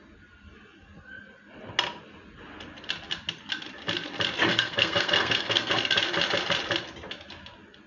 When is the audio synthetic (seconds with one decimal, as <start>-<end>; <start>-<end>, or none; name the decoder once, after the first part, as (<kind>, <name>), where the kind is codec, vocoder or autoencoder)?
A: 4.5-5.7 (codec, SNAC)